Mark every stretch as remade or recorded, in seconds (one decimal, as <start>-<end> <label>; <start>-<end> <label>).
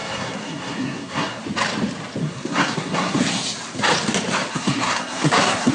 0.0-1.4 remade; 1.4-2.2 recorded; 2.2-3.2 remade; 3.2-4.5 recorded; 4.5-5.7 remade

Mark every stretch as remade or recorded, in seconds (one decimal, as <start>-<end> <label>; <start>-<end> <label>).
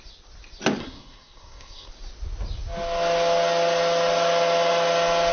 0.0-0.8 recorded; 0.8-1.9 remade; 1.9-5.3 recorded